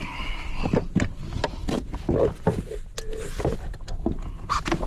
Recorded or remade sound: recorded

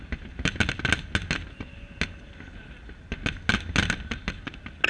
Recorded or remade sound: recorded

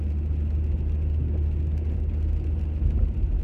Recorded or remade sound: recorded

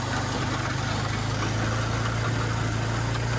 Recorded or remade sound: recorded